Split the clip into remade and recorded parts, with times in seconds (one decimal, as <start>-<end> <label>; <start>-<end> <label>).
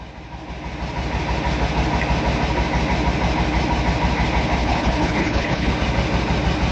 0.0-4.6 recorded; 4.6-5.7 remade; 5.7-6.7 recorded